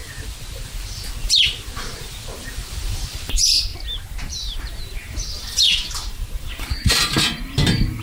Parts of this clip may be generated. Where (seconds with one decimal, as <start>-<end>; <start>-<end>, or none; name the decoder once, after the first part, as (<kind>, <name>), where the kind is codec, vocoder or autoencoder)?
2.8-3.7 (vocoder, BigVGAN v2); 4.2-8.0